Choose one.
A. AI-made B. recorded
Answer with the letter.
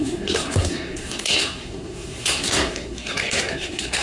A